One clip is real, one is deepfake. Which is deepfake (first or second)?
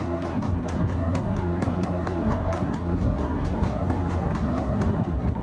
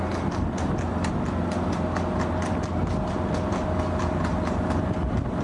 first